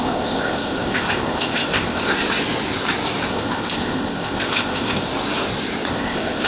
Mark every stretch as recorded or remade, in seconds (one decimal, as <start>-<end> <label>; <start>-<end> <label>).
0.0-2.1 remade; 2.1-3.3 recorded; 3.3-5.1 remade; 5.1-5.9 recorded; 5.9-6.5 remade